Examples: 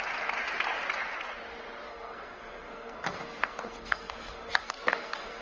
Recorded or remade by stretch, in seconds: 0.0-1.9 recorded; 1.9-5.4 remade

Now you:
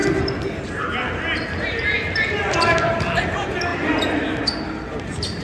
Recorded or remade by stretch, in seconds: 0.0-5.4 recorded